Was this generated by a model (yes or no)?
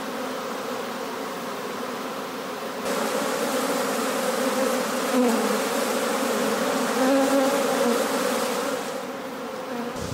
no